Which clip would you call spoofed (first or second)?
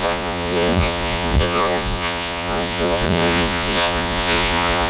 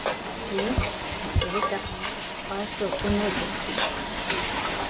first